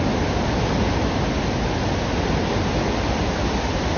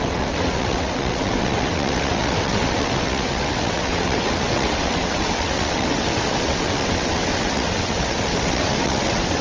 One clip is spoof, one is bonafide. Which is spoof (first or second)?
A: second